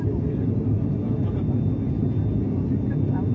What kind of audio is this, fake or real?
real